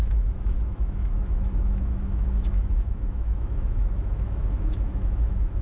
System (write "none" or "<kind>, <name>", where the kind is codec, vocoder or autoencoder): autoencoder, DAC-VAE